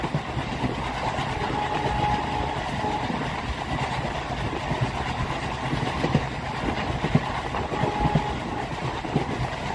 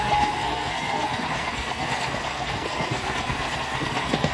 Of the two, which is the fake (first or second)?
second